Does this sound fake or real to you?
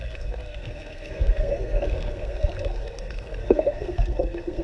fake